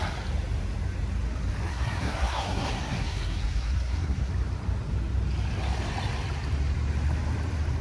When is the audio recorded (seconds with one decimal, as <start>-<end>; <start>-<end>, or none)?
0.0-1.7; 4.3-7.8

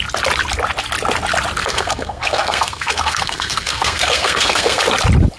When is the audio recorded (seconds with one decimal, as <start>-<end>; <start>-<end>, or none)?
0.0-1.6; 4.8-5.4

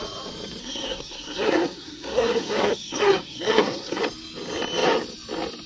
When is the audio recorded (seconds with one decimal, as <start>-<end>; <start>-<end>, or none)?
0.0-0.6; 4.0-5.7